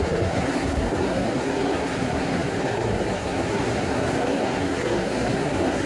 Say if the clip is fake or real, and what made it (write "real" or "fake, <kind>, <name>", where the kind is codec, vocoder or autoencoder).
fake, codec, SNAC